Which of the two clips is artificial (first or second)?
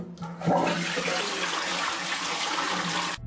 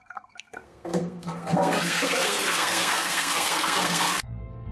second